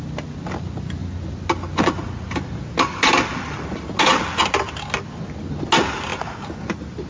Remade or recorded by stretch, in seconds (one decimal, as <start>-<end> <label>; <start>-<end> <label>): 0.0-7.1 recorded